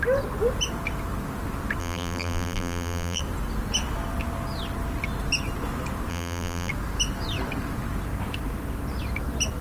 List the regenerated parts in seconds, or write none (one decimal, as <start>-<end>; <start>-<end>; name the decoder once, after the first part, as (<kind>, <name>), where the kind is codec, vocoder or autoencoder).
1.8-3.2 (vocoder, BigVGAN v2); 6.1-6.7